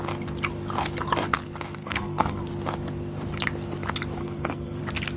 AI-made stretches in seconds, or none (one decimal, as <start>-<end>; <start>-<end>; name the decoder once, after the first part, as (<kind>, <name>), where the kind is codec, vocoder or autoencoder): 1.8-2.4 (codec, SNAC); 4.2-4.8